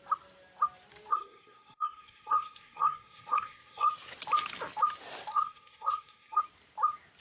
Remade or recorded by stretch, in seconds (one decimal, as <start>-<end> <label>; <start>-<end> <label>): 0.0-1.1 recorded; 1.1-3.9 remade; 3.9-5.3 recorded; 5.3-6.4 remade; 6.4-7.2 recorded